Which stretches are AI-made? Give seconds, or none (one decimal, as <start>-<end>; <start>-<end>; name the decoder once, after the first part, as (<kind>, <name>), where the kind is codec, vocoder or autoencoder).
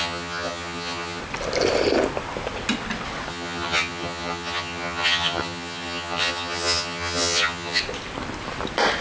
0.0-1.2 (vocoder, HiFi-GAN); 3.3-7.8